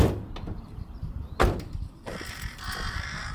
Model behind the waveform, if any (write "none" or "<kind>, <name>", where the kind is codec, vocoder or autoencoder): none